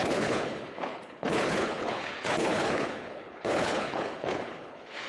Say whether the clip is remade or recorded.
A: remade